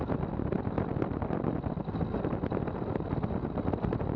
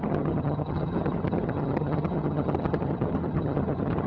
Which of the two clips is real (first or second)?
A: first